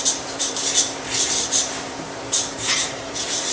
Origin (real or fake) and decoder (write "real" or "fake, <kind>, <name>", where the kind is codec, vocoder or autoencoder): fake, vocoder, BigVGAN v2